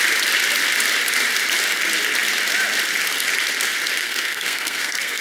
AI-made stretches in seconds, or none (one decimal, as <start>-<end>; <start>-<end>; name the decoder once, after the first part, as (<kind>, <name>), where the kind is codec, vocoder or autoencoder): 4.0-5.2 (codec, SNAC)